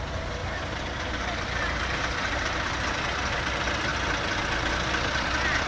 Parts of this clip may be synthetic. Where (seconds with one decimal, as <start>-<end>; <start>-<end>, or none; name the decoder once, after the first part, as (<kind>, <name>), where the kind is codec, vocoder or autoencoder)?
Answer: 0.4-3.0 (vocoder, BigVGAN v2)